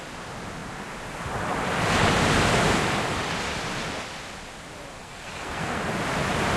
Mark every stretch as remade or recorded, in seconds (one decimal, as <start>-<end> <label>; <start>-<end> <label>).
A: 0.0-5.0 recorded; 5.0-5.8 remade; 5.8-6.6 recorded